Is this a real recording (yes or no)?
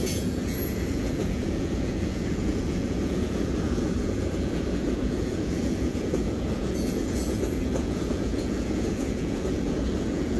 no